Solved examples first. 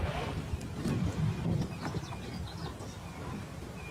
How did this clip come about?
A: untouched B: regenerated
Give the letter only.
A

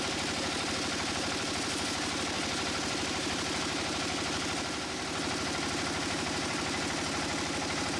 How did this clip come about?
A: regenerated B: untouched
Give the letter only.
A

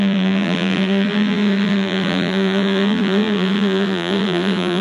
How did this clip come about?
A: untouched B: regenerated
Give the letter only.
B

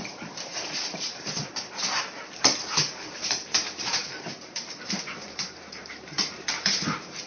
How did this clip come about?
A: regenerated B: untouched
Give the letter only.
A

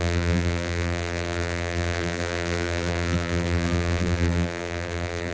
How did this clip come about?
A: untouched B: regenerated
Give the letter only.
B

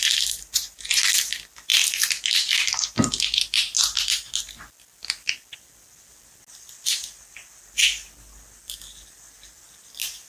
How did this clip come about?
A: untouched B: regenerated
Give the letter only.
A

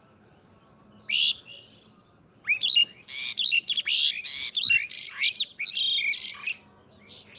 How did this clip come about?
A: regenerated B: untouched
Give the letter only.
B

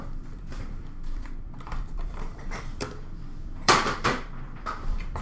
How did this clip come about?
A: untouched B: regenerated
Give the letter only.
B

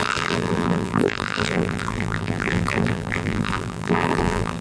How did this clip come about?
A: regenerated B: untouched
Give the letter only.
A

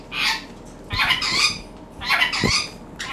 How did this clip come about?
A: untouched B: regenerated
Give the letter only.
B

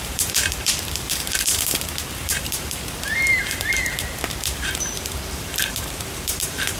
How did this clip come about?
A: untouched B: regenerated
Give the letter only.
B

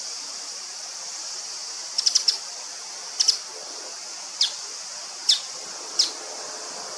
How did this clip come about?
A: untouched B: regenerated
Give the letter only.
A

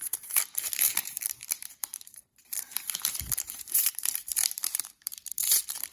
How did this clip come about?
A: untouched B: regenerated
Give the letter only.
B